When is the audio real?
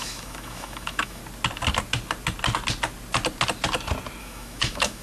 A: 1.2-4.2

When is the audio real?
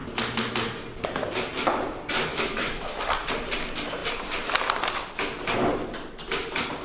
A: 0.0-2.3; 3.0-6.8